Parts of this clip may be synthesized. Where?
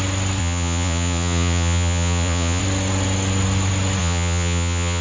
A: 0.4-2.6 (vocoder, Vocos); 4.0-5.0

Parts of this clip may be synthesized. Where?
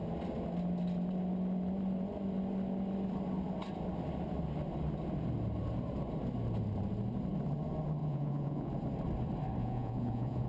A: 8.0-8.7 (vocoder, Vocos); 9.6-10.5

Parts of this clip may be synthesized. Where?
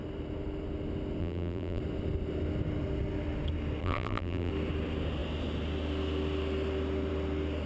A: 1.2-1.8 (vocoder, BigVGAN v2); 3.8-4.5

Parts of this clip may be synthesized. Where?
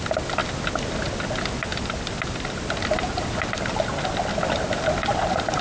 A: none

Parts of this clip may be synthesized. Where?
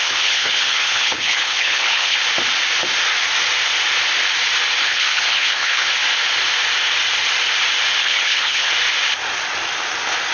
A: 0.0-2.2 (codec, HILCodec); 4.8-5.9; 8.0-8.7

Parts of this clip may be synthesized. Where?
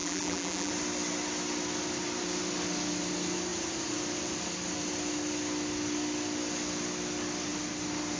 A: 0.0-0.7 (vocoder, BigVGAN v2)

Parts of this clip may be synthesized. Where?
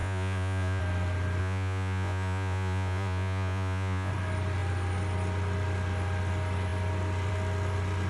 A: 0.0-0.8 (vocoder, Vocos); 1.4-4.1